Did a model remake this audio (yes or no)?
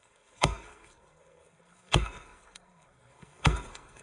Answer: yes